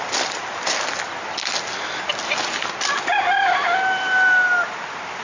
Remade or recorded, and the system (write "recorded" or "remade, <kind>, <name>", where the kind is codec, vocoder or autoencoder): recorded